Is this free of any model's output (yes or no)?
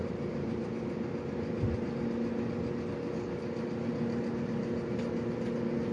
yes